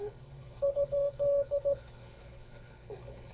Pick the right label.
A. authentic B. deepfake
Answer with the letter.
B